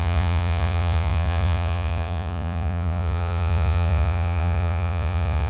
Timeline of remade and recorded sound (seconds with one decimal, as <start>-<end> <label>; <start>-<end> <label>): 0.0-5.5 remade